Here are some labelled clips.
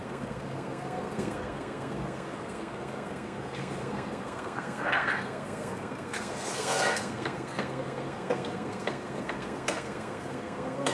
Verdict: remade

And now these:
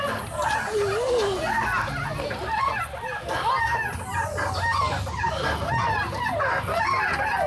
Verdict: recorded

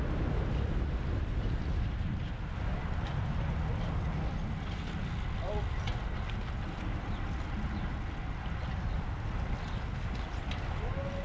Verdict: recorded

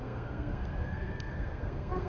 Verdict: remade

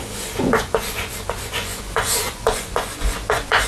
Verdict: remade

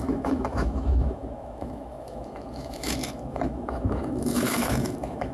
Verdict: remade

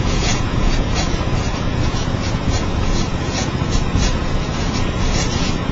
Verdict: remade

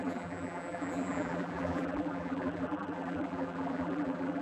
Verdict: remade